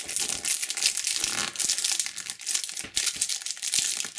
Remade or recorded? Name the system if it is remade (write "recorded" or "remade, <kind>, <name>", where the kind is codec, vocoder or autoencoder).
recorded